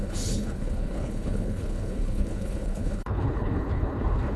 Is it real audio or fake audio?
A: fake